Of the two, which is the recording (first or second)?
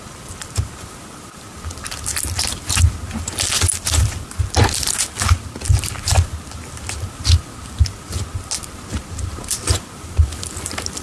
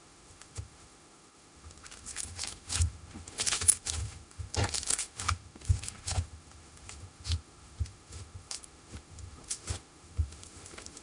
first